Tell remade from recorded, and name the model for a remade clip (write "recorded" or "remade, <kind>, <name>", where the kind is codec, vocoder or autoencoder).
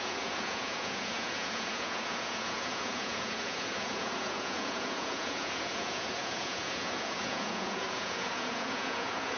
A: remade, vocoder, Vocos